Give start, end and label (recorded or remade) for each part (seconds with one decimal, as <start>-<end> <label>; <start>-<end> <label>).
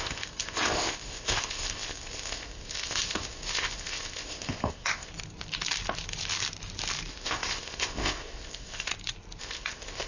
0.0-5.1 remade; 5.1-7.1 recorded; 7.1-8.9 remade; 8.9-9.4 recorded; 9.4-10.1 remade